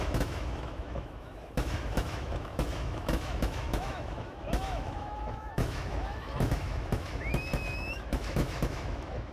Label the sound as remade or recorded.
remade